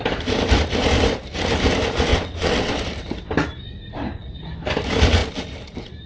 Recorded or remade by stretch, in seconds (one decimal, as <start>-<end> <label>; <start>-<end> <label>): 0.0-2.1 recorded; 2.1-2.7 remade; 2.7-6.1 recorded